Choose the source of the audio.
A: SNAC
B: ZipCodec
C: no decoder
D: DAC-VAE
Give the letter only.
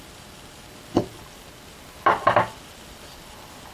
C